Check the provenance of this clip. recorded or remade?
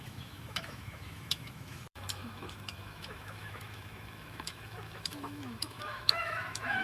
remade